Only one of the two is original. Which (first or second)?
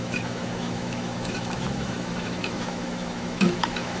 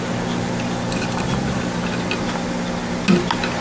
second